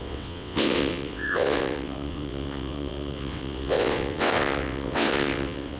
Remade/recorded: remade